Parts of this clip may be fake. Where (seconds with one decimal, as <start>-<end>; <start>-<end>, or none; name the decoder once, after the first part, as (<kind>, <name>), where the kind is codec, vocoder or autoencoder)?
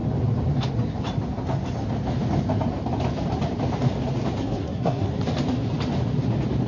4.4-5.1 (codec, SNAC)